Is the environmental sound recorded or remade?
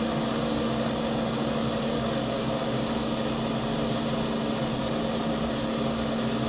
recorded